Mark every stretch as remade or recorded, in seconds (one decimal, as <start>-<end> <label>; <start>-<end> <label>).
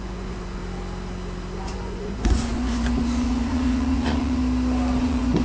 0.0-0.6 remade; 0.6-1.6 recorded; 1.6-4.4 remade; 4.4-5.0 recorded; 5.0-5.4 remade